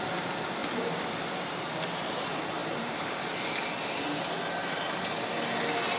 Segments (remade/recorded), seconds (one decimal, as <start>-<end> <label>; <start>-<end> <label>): 0.0-6.0 recorded